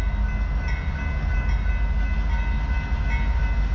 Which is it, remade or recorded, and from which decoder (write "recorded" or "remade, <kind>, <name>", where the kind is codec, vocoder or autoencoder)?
recorded